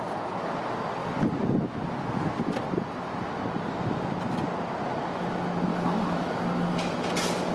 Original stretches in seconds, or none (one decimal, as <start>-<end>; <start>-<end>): 0.0-5.7; 6.4-7.5